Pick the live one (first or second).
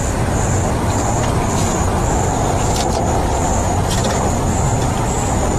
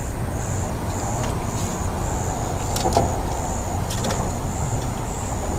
second